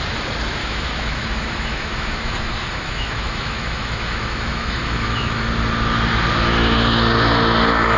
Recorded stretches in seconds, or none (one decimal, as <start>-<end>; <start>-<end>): 0.0-0.6; 5.4-8.0